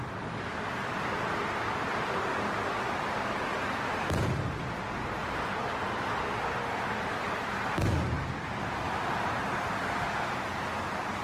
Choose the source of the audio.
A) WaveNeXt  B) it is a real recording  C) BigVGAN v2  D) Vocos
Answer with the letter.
B